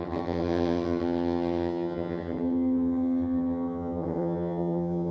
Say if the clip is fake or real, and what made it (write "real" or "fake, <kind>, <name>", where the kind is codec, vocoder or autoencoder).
fake, vocoder, HiFi-GAN